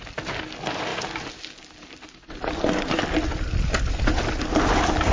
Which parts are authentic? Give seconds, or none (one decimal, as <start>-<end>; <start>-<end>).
0.0-5.1